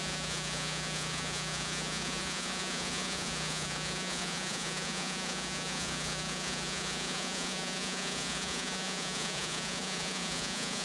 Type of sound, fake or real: fake